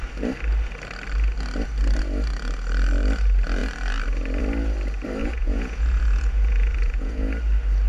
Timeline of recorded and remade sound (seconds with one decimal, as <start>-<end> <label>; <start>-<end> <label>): 0.0-5.2 recorded; 5.2-7.3 remade; 7.3-7.9 recorded